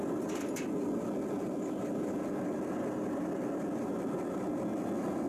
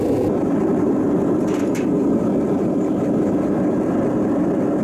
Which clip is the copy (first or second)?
second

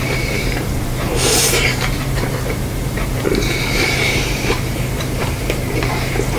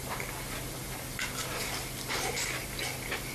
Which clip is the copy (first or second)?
first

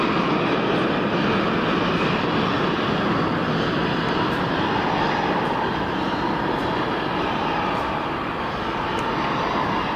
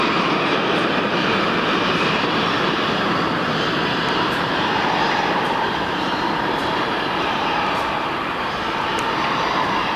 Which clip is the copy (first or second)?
second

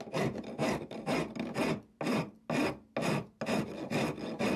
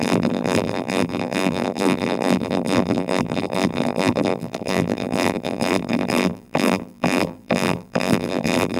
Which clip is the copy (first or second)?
second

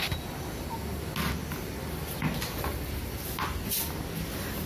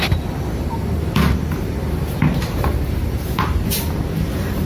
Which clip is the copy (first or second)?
second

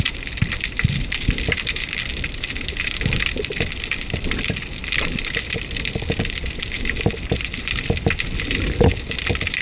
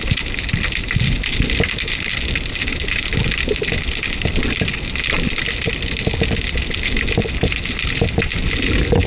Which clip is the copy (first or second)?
first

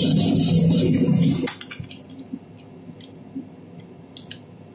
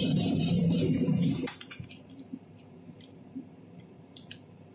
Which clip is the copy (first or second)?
second